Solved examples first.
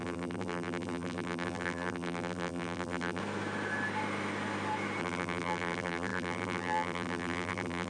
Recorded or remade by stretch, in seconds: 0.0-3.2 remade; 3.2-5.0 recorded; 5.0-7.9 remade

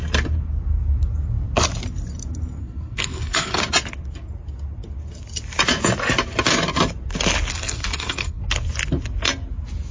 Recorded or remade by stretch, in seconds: 0.0-2.6 recorded; 2.6-3.6 remade; 3.6-7.5 recorded; 7.5-8.4 remade; 8.4-9.9 recorded